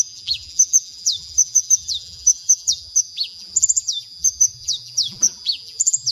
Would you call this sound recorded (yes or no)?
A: no